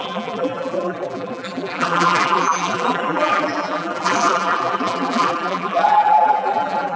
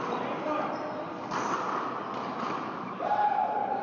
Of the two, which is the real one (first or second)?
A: second